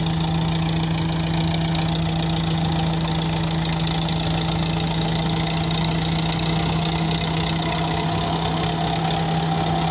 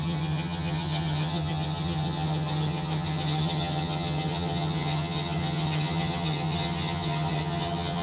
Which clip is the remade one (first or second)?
second